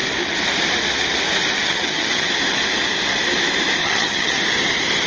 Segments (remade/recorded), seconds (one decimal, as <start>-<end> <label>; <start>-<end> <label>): 0.0-1.6 recorded; 1.6-2.3 remade; 2.3-3.8 recorded; 3.8-4.4 remade; 4.4-5.1 recorded